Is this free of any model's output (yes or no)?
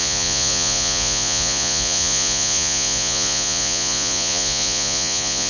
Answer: no